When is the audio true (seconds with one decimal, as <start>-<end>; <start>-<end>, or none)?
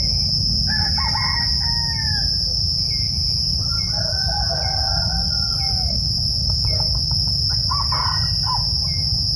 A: 0.0-3.5; 7.5-9.4